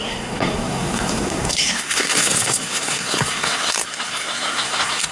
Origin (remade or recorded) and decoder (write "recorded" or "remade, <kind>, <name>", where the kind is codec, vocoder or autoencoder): remade, codec, SNAC